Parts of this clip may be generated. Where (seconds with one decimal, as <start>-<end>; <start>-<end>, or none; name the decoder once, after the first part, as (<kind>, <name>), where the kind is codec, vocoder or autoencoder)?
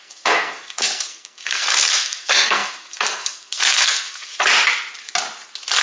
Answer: 0.0-4.3 (codec, SNAC)